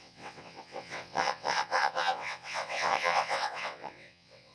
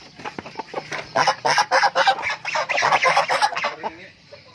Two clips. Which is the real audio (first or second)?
second